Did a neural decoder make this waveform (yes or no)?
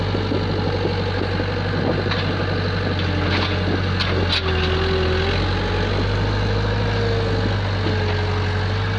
no